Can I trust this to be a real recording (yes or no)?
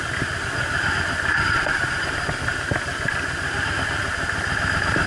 yes